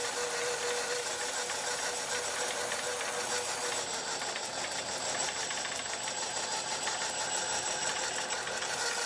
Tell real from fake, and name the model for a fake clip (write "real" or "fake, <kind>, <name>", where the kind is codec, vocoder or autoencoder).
real